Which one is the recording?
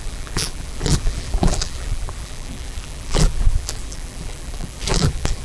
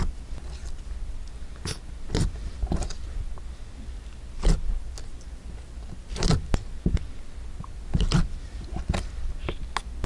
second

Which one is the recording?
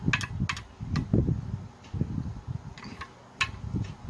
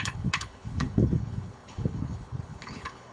first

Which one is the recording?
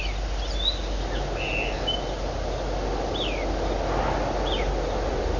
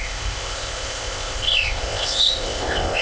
first